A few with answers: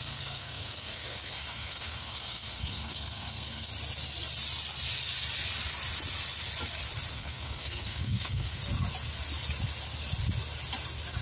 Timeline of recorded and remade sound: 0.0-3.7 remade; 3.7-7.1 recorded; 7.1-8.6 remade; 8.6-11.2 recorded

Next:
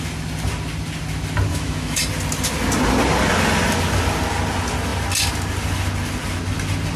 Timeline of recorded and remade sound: 0.0-1.5 recorded; 1.5-2.0 remade; 2.0-7.0 recorded

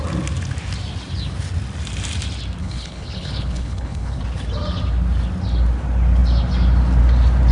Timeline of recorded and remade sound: 0.0-2.6 recorded; 2.6-4.2 remade; 4.2-7.5 recorded

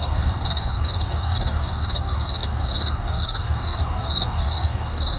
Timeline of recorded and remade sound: 0.0-5.2 remade

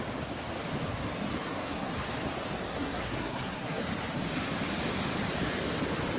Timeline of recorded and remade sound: 0.0-1.4 recorded; 1.4-1.9 remade; 1.9-2.7 recorded; 2.7-3.8 remade; 3.8-6.2 recorded

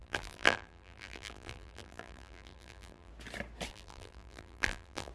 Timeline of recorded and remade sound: 0.0-3.1 remade; 3.1-3.7 recorded; 3.7-5.1 remade

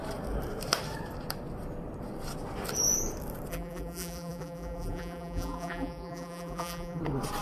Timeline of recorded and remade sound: 0.0-3.5 recorded; 3.5-7.0 remade; 7.0-7.4 recorded

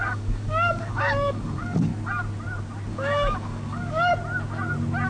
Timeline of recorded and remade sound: 0.0-1.9 remade; 1.9-2.9 recorded; 2.9-4.1 remade; 4.1-5.1 recorded